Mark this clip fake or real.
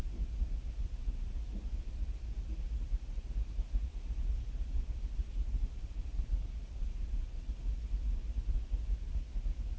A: real